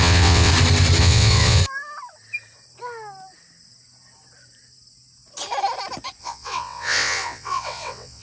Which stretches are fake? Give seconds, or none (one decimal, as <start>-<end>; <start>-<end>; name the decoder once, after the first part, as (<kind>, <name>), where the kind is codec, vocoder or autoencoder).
0.0-0.5 (vocoder, WaveNeXt); 1.0-1.6; 6.2-8.2

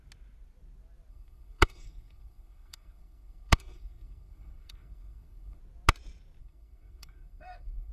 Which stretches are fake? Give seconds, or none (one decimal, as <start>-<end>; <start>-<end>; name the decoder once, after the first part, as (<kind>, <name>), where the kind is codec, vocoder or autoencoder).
1.1-5.6 (codec, SNAC); 6.4-7.9

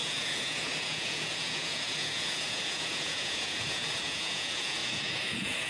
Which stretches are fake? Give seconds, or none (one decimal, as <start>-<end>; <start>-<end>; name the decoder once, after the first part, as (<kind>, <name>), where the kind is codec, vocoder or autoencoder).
0.0-5.7 (vocoder, Vocos)

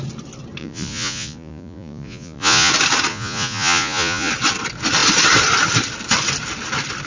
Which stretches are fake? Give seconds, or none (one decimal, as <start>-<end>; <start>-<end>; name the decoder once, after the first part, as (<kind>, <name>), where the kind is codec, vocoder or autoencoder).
0.6-2.7 (vocoder, Vocos); 3.1-4.3

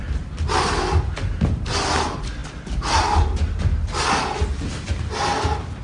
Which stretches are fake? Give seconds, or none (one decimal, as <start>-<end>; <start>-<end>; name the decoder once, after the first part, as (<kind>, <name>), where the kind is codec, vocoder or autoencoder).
none

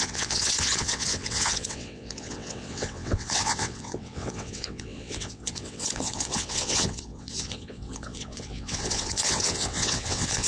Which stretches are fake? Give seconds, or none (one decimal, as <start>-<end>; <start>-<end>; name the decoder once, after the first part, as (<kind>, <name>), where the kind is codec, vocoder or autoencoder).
0.0-10.5 (vocoder, WaveNeXt)

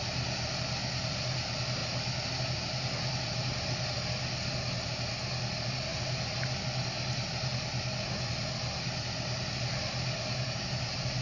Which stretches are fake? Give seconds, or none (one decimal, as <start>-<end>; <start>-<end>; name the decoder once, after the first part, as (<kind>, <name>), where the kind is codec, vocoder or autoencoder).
none

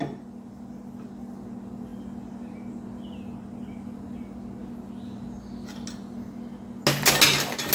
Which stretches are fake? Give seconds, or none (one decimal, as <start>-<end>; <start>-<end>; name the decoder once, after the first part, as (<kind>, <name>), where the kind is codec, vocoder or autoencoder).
none